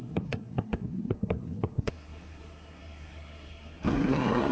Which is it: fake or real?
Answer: fake